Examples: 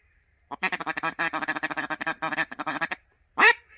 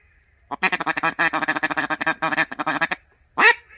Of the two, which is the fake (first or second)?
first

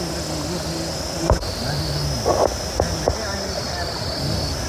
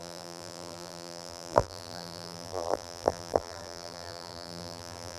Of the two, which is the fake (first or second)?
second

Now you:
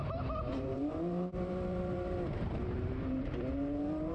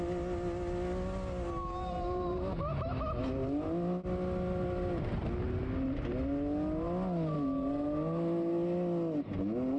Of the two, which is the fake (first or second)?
first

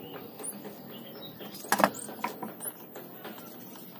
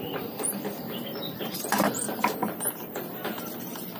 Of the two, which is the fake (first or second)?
second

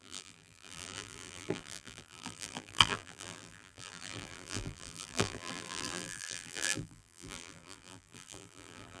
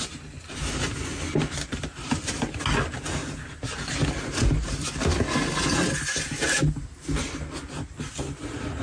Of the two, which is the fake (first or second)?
first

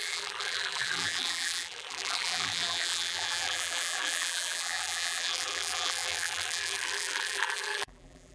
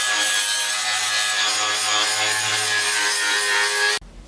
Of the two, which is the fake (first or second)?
first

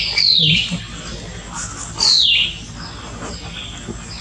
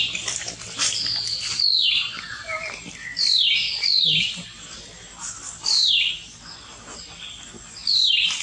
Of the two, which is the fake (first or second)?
second